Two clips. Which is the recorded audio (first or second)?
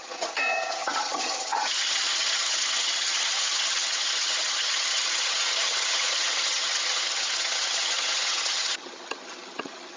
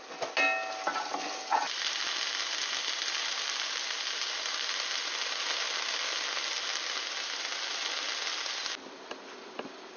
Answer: second